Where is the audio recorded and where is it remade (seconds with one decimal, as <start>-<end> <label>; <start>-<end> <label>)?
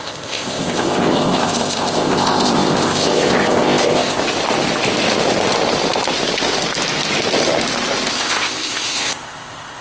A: 0.0-4.2 remade; 4.2-8.1 recorded; 8.1-9.8 remade